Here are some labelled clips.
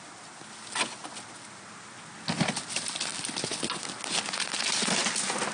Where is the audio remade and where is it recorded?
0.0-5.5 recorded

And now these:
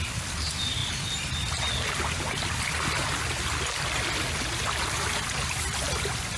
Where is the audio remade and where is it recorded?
0.0-6.4 recorded

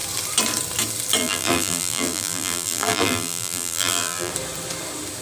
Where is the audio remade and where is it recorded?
0.0-1.2 recorded; 1.2-4.3 remade; 4.3-5.2 recorded

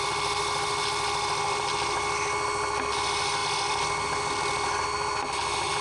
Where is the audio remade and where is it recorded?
0.0-5.8 recorded

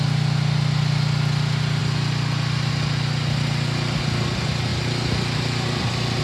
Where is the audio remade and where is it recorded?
0.0-6.2 recorded

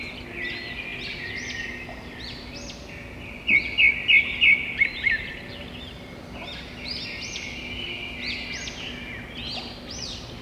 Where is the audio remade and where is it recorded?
0.0-10.4 recorded

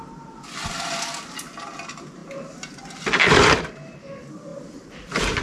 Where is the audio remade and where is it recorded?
0.0-2.2 recorded; 2.2-3.6 remade; 3.6-4.5 recorded; 4.5-5.4 remade